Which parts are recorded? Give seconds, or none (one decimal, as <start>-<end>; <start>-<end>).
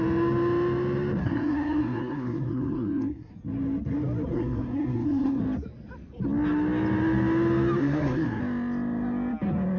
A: 0.0-1.2; 3.3-4.3; 5.4-7.8; 8.4-9.8